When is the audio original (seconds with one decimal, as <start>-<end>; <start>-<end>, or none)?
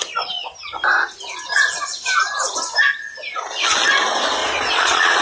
0.0-4.4